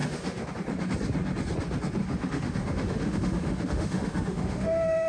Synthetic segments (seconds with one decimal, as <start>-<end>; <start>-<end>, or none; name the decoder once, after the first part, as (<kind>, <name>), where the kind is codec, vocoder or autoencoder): 0.0-0.5 (autoencoder, DAC-VAE); 2.0-5.1